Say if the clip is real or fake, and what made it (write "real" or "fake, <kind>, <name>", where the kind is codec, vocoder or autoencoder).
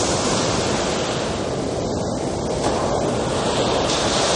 real